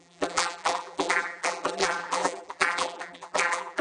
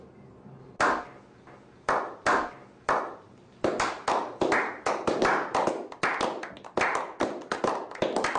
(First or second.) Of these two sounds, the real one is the second